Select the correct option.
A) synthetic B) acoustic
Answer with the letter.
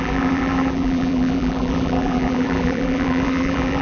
A